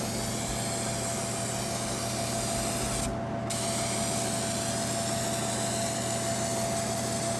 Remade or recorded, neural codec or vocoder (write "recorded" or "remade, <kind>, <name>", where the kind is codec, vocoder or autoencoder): recorded